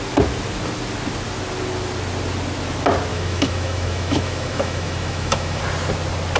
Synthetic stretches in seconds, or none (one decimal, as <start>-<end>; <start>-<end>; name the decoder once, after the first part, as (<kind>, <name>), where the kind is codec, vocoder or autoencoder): 3.1-5.6 (autoencoder, DAC-VAE)